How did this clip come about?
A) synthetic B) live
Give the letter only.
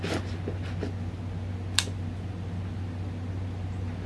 B